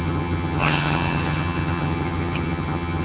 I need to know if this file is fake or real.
fake